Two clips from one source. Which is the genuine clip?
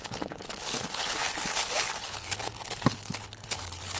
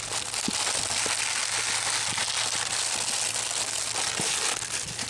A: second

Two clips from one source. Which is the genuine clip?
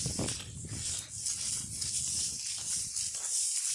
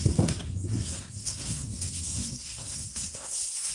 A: first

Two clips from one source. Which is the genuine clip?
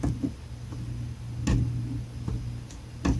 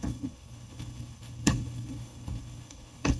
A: first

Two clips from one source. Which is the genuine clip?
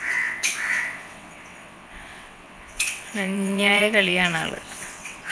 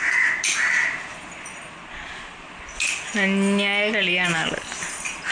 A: second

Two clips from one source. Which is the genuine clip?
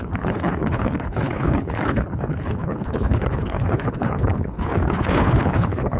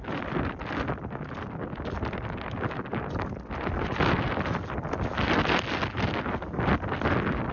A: second